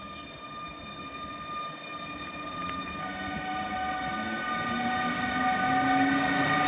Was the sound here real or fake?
real